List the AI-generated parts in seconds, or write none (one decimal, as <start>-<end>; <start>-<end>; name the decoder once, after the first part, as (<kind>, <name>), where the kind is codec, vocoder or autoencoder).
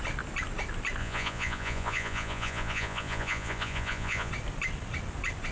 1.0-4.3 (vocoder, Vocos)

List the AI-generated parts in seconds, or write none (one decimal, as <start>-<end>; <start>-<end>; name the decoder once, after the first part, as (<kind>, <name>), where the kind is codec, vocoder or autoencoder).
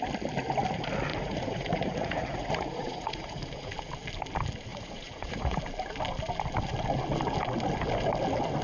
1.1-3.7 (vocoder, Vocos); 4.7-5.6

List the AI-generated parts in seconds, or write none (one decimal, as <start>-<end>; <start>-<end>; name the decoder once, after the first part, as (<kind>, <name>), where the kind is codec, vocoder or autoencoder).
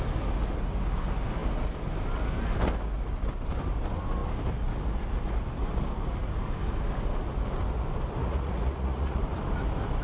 8.2-9.2 (vocoder, Vocos)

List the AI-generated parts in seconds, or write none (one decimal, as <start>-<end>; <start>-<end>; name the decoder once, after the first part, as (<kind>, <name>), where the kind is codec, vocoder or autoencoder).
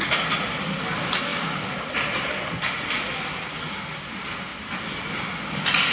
none